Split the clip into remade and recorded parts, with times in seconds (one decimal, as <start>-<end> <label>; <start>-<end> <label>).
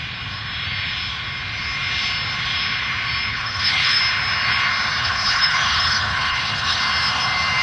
0.0-3.3 recorded; 3.3-4.0 remade; 4.0-5.0 recorded; 5.0-6.8 remade; 6.8-7.6 recorded